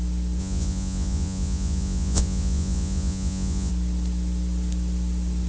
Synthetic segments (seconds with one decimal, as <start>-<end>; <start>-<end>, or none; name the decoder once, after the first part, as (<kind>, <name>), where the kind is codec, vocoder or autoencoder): 0.4-3.7 (vocoder, Vocos)